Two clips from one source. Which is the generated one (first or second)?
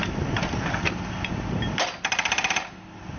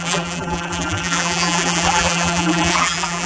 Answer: second